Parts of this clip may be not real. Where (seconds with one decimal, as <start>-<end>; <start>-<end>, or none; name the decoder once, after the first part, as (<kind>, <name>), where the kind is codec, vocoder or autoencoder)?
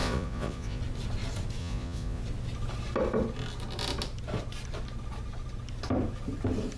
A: 0.0-0.8 (vocoder, Vocos); 1.6-2.2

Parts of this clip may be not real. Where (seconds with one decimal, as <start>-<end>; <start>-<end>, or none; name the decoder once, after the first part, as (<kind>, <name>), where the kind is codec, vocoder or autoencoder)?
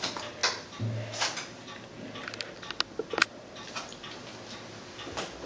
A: none